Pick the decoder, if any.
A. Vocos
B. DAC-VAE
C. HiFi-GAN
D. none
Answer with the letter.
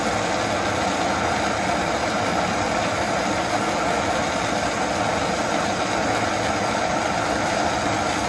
D